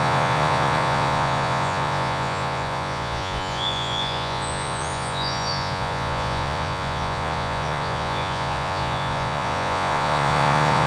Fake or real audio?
fake